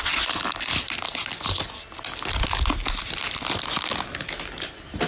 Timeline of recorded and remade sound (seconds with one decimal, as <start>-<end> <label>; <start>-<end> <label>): 0.0-5.1 recorded

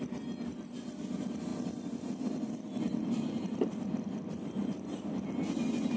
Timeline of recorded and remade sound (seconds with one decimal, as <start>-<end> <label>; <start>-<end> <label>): 0.0-1.5 recorded; 1.5-5.1 remade; 5.1-6.0 recorded

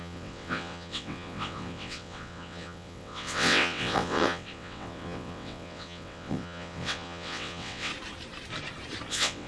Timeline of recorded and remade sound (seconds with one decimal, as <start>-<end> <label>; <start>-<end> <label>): 0.0-7.9 remade; 7.9-9.1 recorded; 9.1-9.5 remade

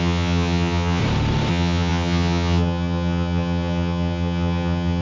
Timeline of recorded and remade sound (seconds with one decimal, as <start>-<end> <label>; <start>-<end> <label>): 0.0-1.0 remade; 1.0-1.5 recorded; 1.5-5.0 remade

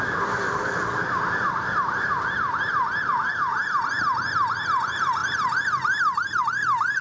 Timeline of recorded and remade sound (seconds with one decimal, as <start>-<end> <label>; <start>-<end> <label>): 0.0-1.0 remade; 1.0-3.8 recorded; 3.8-7.0 remade

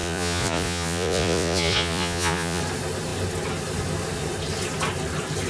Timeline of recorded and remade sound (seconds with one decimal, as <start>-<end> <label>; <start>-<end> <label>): 0.0-2.6 remade; 2.6-5.5 recorded

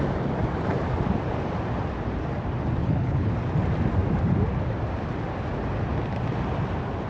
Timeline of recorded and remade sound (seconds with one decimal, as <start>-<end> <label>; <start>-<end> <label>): 0.0-2.8 recorded; 2.8-3.3 remade; 3.3-7.1 recorded